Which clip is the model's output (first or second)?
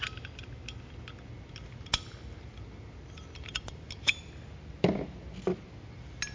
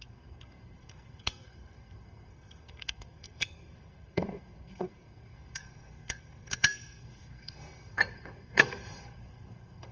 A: second